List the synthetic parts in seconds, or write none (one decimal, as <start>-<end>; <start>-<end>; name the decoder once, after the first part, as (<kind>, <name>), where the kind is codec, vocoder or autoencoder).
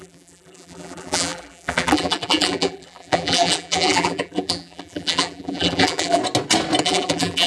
0.0-6.2 (vocoder, BigVGAN v2); 6.8-7.5